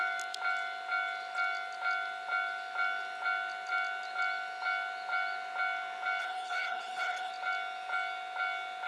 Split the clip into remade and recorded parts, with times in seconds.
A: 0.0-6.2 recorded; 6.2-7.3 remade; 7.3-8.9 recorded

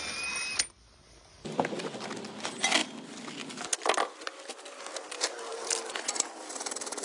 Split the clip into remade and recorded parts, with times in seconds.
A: 0.0-7.0 recorded